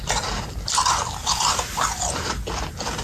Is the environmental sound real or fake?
real